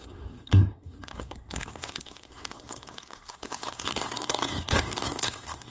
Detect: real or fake fake